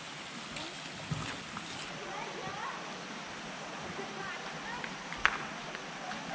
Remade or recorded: recorded